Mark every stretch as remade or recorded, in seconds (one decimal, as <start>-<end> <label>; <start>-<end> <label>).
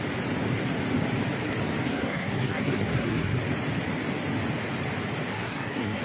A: 0.0-1.9 recorded; 1.9-3.4 remade; 3.4-5.3 recorded; 5.3-6.0 remade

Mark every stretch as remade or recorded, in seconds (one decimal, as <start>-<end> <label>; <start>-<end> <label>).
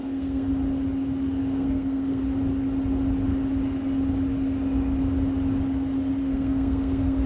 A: 0.0-0.5 remade; 0.5-1.4 recorded; 1.4-2.2 remade; 2.2-6.2 recorded; 6.2-7.3 remade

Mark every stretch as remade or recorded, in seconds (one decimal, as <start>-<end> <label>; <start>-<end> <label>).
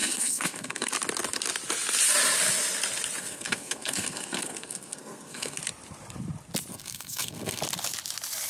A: 0.0-0.9 remade; 0.9-3.2 recorded; 3.2-5.6 remade; 5.6-6.7 recorded; 6.7-7.6 remade; 7.6-8.5 recorded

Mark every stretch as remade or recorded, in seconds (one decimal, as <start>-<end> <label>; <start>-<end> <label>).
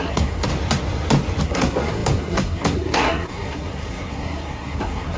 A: 0.0-0.5 remade; 0.5-1.4 recorded; 1.4-5.2 remade